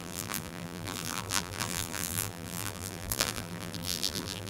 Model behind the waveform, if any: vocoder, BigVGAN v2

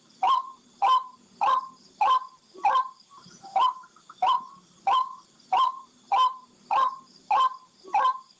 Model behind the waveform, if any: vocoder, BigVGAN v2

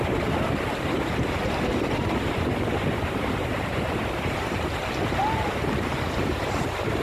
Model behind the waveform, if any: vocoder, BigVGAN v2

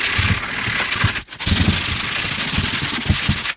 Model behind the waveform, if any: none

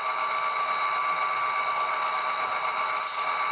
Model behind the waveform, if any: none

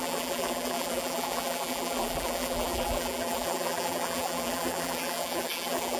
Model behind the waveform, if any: vocoder, BigVGAN v2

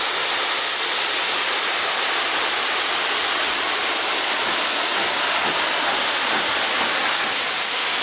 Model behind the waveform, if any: none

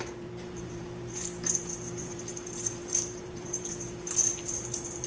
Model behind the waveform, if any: vocoder, BigVGAN v2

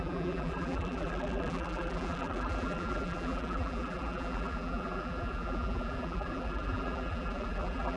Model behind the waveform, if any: vocoder, BigVGAN v2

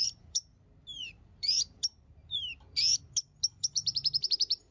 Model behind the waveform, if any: vocoder, BigVGAN v2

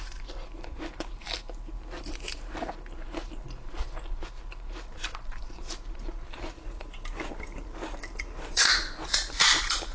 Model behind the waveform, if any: vocoder, BigVGAN v2